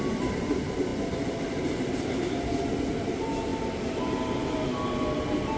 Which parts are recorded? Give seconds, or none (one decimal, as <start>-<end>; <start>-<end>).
0.0-5.6